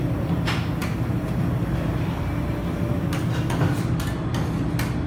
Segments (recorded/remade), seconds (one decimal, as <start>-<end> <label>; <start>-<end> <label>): 0.0-5.1 recorded